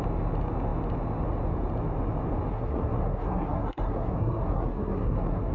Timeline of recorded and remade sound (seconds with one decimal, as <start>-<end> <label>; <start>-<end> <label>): 0.0-2.5 recorded; 2.5-5.5 remade